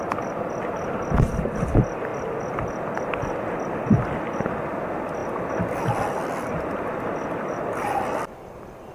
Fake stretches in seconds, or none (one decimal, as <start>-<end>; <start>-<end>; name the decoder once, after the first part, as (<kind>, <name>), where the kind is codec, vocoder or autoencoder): none